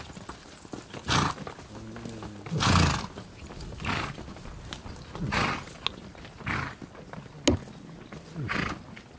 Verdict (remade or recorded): recorded